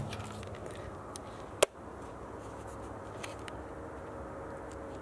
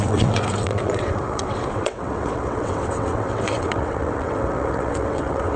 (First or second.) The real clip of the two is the first